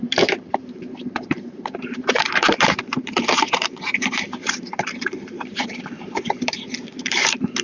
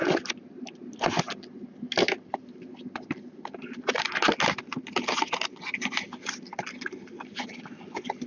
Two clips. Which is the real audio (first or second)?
second